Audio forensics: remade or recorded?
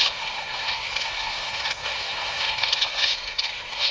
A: remade